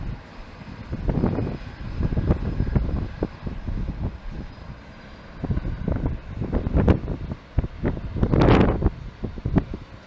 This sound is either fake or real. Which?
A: real